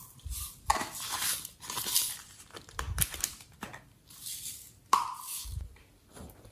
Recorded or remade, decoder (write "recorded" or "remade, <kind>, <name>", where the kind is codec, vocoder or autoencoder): recorded